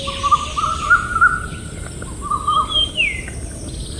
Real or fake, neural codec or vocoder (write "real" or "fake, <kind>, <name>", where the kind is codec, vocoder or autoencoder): real